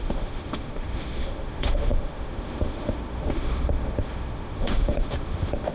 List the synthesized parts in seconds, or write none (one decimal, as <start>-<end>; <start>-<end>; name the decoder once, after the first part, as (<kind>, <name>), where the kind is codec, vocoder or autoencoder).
0.0-5.7 (autoencoder, DAC-VAE)